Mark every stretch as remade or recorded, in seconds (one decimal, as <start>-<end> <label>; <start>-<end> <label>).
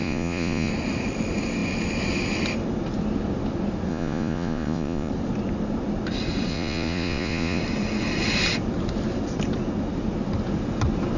0.0-0.7 remade; 0.7-3.9 recorded; 3.9-5.1 remade; 5.1-6.5 recorded; 6.5-7.6 remade; 7.6-11.2 recorded